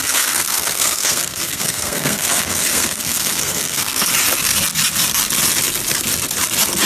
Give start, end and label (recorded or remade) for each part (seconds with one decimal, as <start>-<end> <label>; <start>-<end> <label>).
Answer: 0.0-4.1 remade; 4.1-6.9 recorded